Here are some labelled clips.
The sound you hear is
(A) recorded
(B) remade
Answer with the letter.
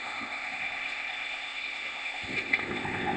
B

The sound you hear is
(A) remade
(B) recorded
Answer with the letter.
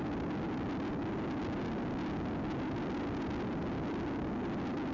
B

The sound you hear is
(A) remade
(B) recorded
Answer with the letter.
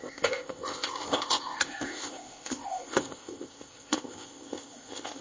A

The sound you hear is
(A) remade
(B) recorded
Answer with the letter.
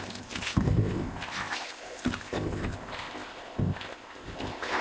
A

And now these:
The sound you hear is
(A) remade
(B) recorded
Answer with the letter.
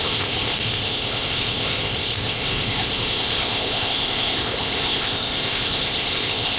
A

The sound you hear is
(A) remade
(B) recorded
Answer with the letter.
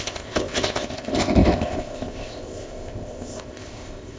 A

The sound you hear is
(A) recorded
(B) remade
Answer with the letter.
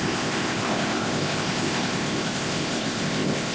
B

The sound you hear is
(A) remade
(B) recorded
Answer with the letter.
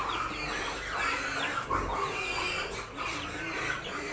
B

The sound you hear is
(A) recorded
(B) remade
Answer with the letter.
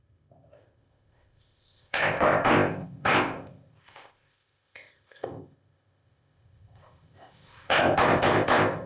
B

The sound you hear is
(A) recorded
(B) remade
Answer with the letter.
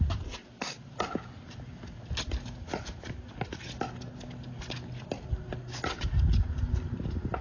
A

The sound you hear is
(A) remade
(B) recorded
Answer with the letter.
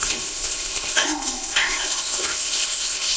A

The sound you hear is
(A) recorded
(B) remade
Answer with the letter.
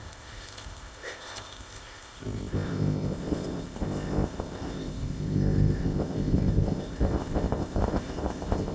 B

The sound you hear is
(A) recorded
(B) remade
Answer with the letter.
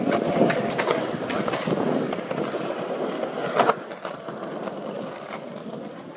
A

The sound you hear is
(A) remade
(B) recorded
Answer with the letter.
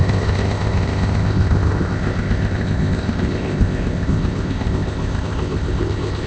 A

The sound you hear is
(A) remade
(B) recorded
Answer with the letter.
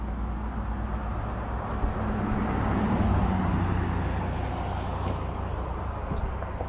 B